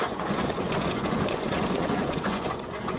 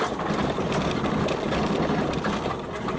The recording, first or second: second